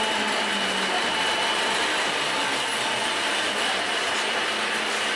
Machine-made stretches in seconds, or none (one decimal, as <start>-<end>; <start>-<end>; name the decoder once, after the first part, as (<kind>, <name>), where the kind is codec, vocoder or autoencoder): none

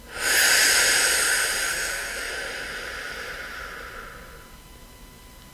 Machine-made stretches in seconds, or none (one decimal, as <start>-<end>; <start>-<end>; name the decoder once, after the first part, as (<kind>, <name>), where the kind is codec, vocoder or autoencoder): 1.7-2.3 (codec, SNAC)

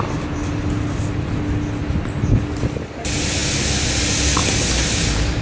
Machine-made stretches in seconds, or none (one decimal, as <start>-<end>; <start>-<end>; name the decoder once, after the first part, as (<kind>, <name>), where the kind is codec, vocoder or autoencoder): none